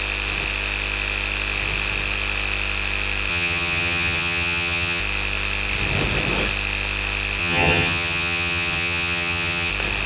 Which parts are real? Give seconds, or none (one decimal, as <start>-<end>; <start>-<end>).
0.0-3.3; 5.0-7.4; 9.7-10.1